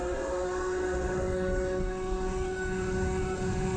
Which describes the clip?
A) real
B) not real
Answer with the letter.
B